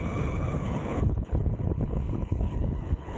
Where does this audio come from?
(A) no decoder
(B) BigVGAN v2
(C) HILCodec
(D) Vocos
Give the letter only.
C